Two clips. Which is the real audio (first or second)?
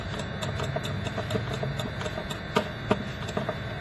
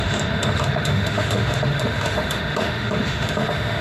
first